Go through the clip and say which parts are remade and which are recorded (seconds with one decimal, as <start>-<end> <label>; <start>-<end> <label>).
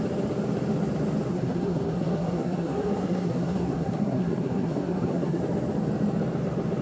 0.0-1.3 recorded; 1.3-5.4 remade; 5.4-6.8 recorded